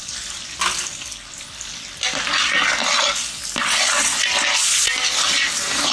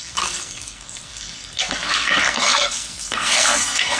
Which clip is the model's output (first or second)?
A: second